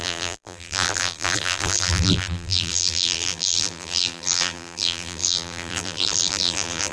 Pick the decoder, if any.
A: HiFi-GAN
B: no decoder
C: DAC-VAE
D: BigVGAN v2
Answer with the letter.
D